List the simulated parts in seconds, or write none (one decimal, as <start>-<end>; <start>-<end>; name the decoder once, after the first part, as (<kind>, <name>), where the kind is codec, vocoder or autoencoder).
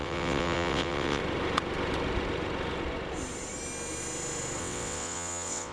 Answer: 0.0-1.2 (vocoder, WaveNeXt); 4.6-5.7